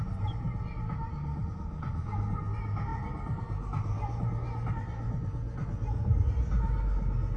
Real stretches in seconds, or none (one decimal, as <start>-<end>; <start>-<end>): 0.0-7.4